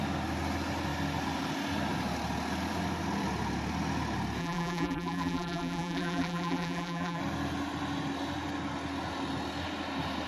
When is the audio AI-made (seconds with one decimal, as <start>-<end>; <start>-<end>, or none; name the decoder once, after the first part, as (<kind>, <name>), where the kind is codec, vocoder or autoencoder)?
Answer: 4.4-7.2 (vocoder, BigVGAN v2)